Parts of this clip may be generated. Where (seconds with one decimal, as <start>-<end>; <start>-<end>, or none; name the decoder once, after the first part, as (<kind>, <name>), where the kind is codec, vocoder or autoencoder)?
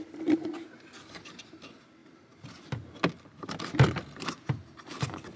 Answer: none